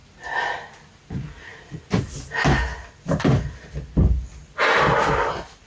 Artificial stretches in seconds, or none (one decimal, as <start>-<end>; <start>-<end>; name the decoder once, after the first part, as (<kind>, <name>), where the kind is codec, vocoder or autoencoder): none